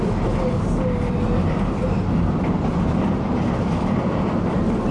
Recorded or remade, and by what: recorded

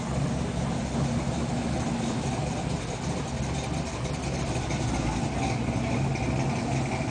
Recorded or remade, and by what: recorded